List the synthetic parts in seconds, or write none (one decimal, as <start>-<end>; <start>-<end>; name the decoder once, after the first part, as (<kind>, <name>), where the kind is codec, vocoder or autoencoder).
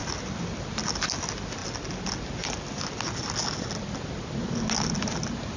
none